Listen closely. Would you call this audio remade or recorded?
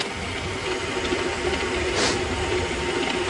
recorded